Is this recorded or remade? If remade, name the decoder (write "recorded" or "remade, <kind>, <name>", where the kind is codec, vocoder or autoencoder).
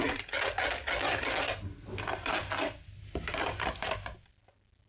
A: recorded